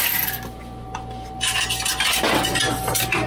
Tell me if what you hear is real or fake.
real